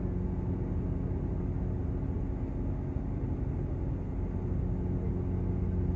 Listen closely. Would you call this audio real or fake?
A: real